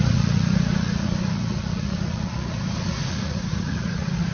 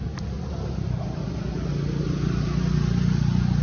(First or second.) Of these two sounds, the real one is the second